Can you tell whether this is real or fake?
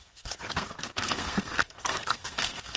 fake